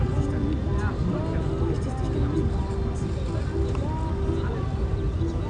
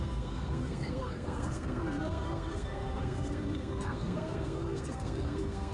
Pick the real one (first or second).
first